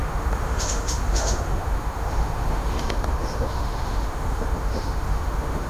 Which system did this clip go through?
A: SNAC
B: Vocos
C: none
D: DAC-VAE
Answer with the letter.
D